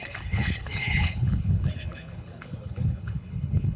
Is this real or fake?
fake